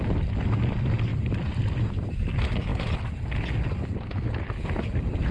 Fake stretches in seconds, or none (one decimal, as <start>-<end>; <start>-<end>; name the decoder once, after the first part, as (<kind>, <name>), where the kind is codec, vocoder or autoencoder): 1.1-1.8 (vocoder, BigVGAN v2)